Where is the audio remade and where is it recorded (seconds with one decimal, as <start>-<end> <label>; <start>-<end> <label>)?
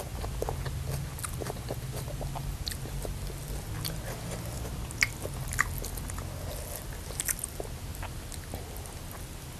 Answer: 0.0-9.6 recorded